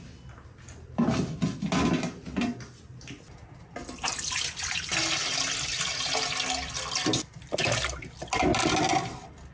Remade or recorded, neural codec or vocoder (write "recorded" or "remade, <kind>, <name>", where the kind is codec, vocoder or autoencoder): recorded